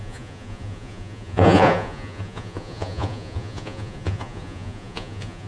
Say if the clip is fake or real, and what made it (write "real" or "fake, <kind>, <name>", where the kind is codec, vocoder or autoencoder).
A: fake, vocoder, Vocos